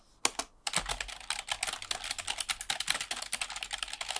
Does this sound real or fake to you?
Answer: real